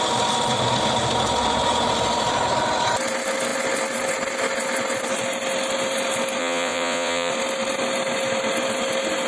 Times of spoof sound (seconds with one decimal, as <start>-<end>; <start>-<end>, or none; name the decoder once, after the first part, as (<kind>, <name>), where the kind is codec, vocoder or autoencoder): 6.4-7.3 (vocoder, WaveNeXt)